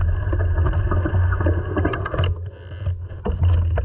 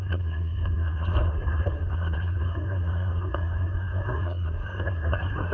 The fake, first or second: second